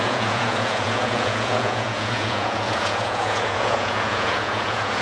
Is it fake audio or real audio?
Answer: fake